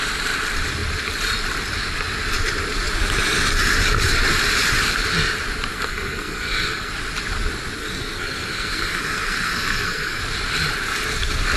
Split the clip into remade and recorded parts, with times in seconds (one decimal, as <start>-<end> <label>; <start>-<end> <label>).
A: 0.0-5.7 recorded; 5.7-6.9 remade; 6.9-7.8 recorded; 7.8-10.2 remade; 10.2-11.6 recorded